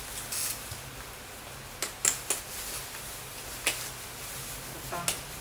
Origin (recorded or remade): recorded